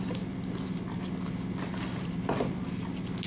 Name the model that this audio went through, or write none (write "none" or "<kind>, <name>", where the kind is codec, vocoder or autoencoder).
none